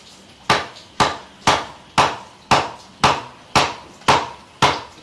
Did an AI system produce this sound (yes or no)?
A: no